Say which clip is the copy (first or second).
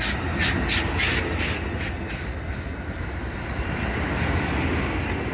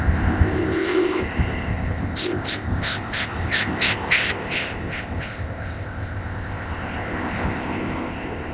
second